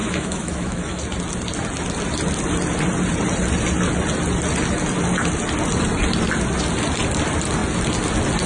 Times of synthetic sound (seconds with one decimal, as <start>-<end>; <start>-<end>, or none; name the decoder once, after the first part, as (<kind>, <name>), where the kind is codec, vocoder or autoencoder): 0.0-1.0 (autoencoder, DAC-VAE)